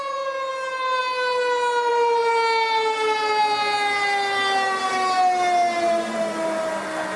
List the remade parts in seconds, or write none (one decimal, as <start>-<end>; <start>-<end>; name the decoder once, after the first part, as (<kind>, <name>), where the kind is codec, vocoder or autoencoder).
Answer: none